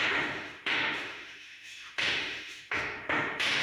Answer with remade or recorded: remade